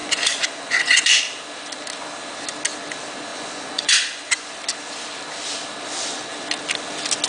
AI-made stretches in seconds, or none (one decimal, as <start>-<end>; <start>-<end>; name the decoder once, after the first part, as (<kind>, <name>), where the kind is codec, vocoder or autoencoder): 0.0-1.2 (vocoder, Vocos); 3.3-4.5